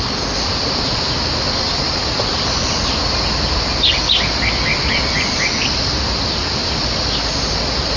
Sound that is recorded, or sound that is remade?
recorded